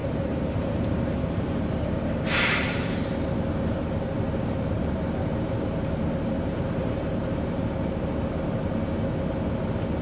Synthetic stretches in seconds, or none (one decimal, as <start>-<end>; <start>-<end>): 0.0-3.0; 6.5-7.1